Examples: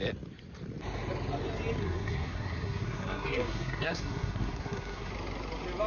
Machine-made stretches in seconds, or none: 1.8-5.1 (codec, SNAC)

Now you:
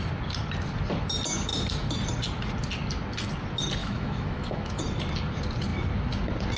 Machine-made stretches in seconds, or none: 3.8-4.8 (autoencoder, DAC-VAE)

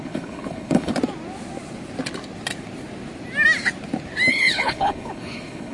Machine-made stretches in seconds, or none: 0.0-0.9 (codec, HILCodec); 4.3-5.7

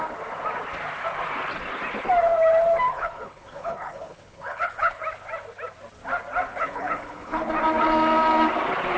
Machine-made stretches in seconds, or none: 2.9-5.0 (codec, HILCodec); 6.5-7.5

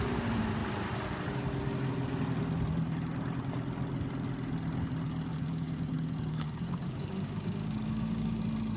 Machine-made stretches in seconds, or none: 5.3-8.4 (codec, DAC)

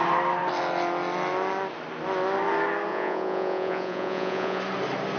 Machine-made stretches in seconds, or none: 2.9-4.6 (vocoder, Vocos)